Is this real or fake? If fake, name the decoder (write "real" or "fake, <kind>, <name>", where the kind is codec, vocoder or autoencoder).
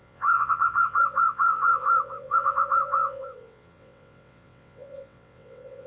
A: fake, vocoder, WaveNeXt